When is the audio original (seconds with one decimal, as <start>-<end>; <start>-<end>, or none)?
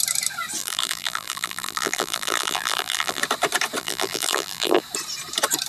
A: 0.0-0.6; 3.2-3.8; 4.8-5.7